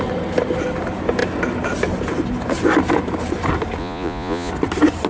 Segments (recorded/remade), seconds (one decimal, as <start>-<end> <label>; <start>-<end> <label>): 0.0-3.8 recorded; 3.8-4.5 remade; 4.5-5.1 recorded